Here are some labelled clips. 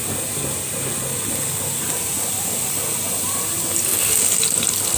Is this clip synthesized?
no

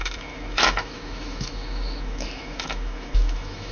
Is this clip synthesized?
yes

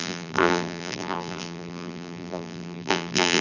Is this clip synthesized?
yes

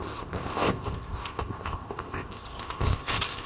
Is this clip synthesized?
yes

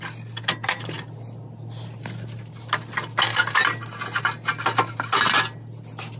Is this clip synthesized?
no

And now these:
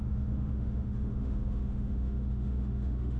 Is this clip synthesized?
yes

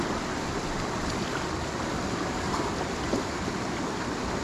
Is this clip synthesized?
no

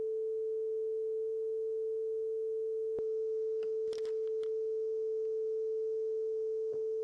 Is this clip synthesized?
no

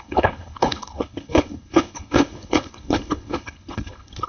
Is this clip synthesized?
yes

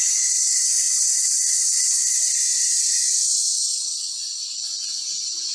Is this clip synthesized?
yes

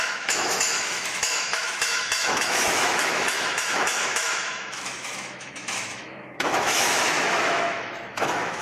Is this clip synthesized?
yes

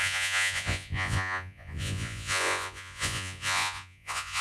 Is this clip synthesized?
yes